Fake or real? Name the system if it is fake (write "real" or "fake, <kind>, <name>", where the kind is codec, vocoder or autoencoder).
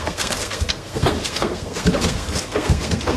fake, codec, SNAC